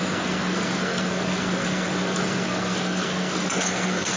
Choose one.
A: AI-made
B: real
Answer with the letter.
A